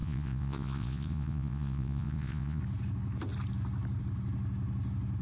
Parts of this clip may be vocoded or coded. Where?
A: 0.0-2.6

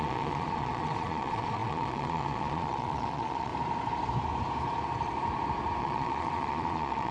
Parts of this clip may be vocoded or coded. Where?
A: 0.0-3.5; 5.8-7.1

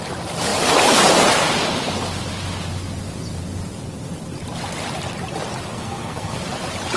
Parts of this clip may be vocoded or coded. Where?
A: 5.7-6.4

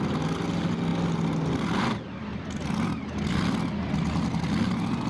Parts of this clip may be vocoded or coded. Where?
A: none

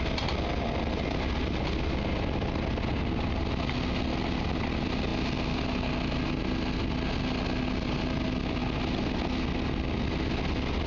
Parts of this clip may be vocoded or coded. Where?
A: none

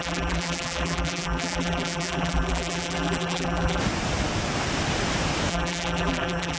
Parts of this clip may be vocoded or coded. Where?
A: 0.0-3.8; 5.5-6.6

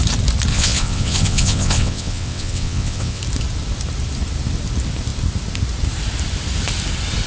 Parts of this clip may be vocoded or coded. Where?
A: 0.5-3.2